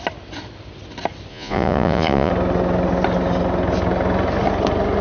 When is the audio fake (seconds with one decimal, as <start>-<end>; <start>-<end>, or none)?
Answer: 1.3-2.3